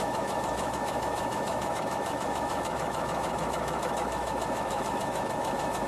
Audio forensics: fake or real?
fake